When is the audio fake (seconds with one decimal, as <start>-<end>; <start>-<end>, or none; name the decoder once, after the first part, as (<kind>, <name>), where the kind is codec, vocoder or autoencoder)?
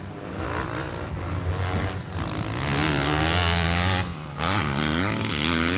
none